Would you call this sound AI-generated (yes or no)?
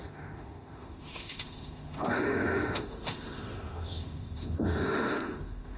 yes